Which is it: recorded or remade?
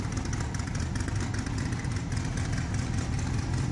recorded